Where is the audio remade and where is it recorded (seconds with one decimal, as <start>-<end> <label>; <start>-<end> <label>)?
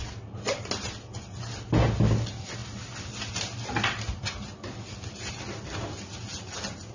0.0-2.6 recorded; 2.6-3.2 remade; 3.2-6.9 recorded